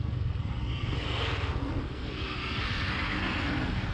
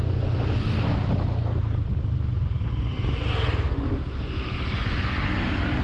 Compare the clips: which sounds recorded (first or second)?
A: second